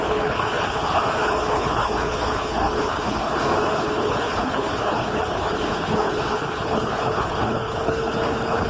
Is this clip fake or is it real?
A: fake